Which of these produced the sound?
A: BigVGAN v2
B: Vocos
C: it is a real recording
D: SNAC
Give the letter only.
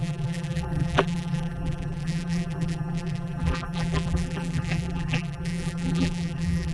A